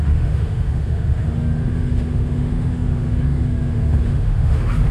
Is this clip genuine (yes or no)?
no